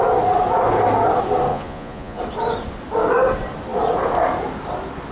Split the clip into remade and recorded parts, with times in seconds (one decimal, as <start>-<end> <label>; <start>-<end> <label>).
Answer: 0.0-1.5 recorded; 1.5-2.2 remade; 2.2-5.1 recorded